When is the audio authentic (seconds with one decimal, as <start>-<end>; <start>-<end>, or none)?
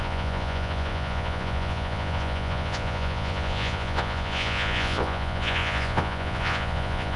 none